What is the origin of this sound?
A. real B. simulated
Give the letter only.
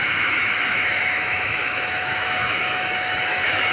B